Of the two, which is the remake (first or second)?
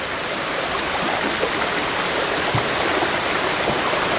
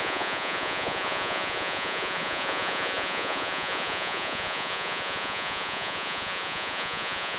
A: second